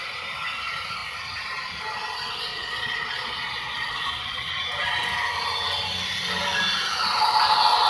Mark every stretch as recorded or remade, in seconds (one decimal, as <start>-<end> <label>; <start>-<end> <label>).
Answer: 0.0-2.5 recorded; 2.5-4.5 remade; 4.5-7.9 recorded